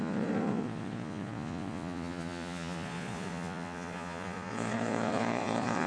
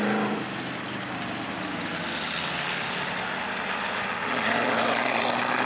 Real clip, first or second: second